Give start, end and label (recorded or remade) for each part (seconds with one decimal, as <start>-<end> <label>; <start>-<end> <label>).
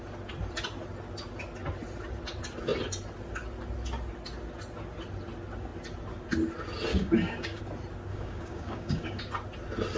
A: 0.0-6.9 recorded; 6.9-7.6 remade; 7.6-8.1 recorded; 8.1-9.2 remade; 9.2-10.0 recorded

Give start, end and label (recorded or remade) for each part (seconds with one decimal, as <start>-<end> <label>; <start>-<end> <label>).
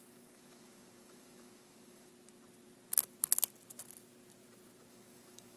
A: 0.0-2.1 remade; 2.1-4.9 recorded; 4.9-5.6 remade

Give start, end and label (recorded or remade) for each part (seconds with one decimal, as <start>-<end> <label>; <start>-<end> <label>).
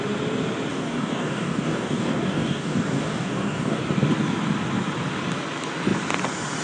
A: 0.0-0.7 recorded; 0.7-3.8 remade; 3.8-6.6 recorded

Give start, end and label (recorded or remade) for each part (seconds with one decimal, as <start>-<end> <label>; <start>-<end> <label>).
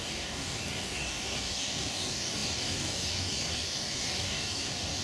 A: 0.0-5.0 remade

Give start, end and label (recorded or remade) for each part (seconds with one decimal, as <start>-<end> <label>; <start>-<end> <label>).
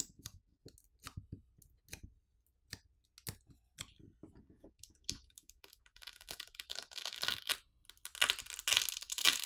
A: 0.0-0.6 remade; 0.6-4.4 recorded; 4.4-7.5 remade; 7.5-9.0 recorded; 9.0-9.5 remade